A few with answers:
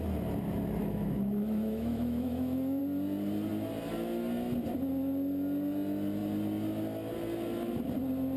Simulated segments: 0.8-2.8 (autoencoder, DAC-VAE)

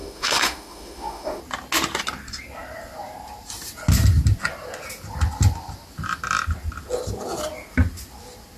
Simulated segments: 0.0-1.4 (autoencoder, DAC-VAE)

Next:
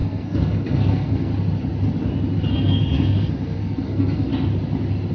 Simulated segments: 0.0-1.3 (codec, SNAC); 2.5-4.3

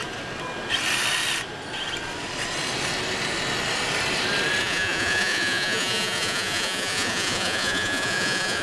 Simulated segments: 4.6-8.6 (vocoder, Vocos)